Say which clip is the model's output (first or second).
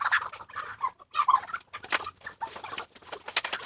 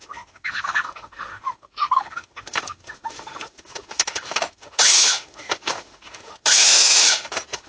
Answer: second